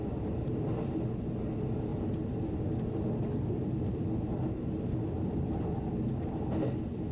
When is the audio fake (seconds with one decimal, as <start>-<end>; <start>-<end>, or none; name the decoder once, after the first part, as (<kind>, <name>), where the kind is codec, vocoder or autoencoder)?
none